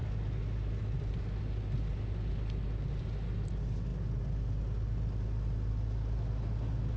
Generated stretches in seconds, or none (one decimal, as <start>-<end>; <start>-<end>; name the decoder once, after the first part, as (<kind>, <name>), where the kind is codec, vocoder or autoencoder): none